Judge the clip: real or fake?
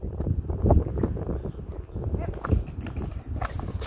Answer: real